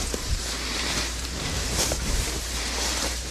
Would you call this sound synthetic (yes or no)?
yes